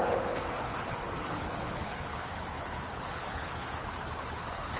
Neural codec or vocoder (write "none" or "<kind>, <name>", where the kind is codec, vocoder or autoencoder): codec, HILCodec